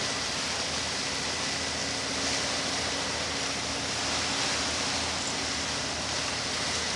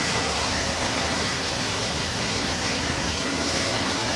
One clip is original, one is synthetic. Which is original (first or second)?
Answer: first